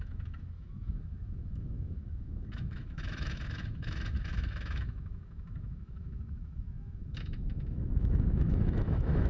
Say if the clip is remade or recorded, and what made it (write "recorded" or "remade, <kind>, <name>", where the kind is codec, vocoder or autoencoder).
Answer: remade, autoencoder, DAC-VAE